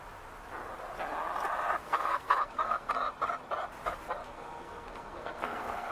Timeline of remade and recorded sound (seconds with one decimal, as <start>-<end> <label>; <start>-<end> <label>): 0.0-1.8 recorded; 1.8-2.9 remade; 2.9-4.2 recorded; 4.2-5.9 remade